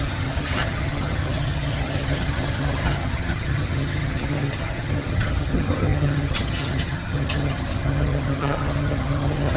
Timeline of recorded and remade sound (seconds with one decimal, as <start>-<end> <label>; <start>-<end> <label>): 0.0-9.6 remade